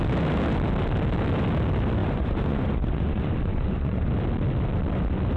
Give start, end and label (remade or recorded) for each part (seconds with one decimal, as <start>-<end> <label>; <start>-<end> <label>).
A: 0.0-2.0 recorded; 2.0-4.1 remade; 4.1-5.4 recorded

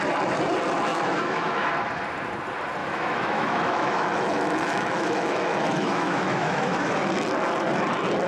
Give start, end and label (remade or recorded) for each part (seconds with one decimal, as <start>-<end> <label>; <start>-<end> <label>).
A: 0.0-0.9 recorded; 0.9-1.7 remade; 1.7-2.8 recorded; 2.8-7.1 remade; 7.1-8.3 recorded

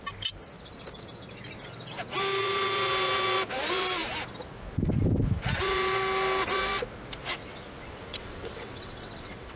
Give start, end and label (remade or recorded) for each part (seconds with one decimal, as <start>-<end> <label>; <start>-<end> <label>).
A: 0.0-8.1 recorded; 8.1-9.6 remade

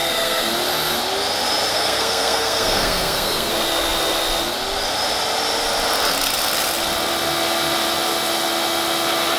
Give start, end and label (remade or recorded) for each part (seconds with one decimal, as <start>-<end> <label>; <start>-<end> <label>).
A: 0.0-0.5 remade; 0.5-1.7 recorded; 1.7-3.5 remade; 3.5-9.4 recorded

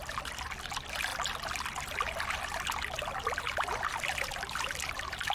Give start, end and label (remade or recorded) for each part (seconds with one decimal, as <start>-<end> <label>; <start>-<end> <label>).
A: 0.0-5.3 recorded